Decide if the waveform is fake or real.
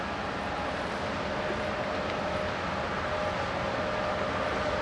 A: real